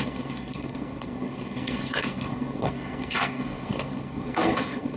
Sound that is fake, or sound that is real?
fake